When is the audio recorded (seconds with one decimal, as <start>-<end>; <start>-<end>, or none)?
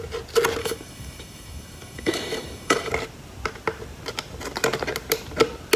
0.0-0.6; 2.9-5.8